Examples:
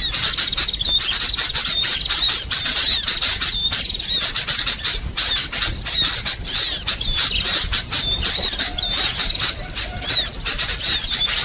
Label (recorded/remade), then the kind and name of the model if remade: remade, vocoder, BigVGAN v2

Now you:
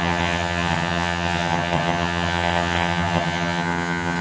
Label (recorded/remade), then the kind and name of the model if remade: remade, vocoder, HiFi-GAN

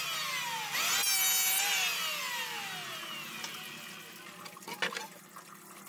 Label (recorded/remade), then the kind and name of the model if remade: recorded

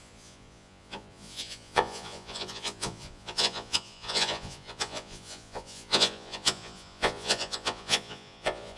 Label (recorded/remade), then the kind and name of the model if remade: remade, vocoder, Vocos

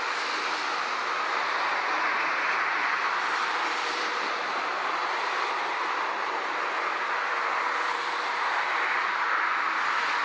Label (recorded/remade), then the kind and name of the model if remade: recorded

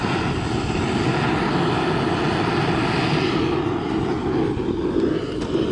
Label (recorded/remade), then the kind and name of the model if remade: recorded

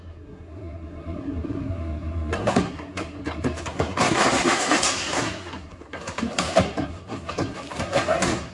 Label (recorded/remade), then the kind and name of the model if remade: remade, codec, SNAC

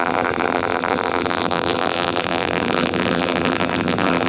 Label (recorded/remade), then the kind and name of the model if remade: remade, vocoder, BigVGAN v2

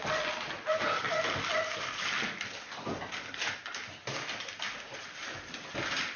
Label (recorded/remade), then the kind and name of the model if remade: recorded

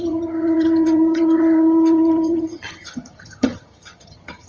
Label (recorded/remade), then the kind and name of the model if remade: remade, vocoder, HiFi-GAN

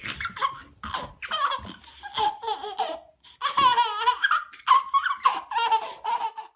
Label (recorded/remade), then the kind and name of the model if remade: recorded